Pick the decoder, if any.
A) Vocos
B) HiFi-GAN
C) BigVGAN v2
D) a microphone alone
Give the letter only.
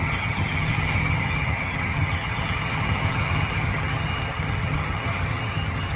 B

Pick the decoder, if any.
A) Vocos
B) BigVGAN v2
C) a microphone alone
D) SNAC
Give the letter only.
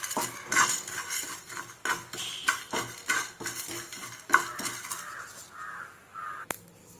C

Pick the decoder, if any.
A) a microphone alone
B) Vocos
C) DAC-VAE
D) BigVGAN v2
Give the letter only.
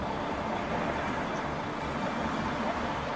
A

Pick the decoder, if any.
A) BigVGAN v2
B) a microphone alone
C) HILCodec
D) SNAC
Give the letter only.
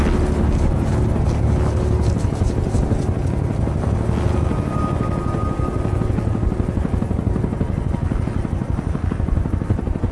B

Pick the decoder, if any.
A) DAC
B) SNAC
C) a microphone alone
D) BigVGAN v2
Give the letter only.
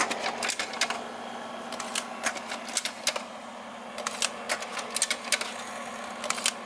C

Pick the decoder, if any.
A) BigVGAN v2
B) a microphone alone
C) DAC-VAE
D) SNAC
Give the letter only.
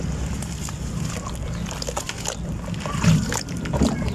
B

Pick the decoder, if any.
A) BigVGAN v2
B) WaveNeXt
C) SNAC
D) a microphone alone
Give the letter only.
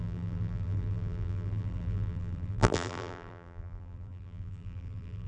A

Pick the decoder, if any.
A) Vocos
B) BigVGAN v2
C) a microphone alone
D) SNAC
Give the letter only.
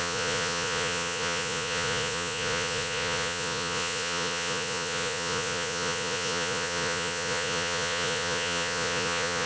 A